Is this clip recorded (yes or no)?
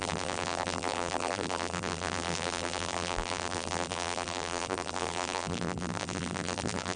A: no